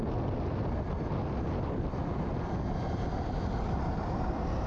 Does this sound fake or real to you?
real